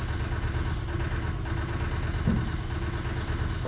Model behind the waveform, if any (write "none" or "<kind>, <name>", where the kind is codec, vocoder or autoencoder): none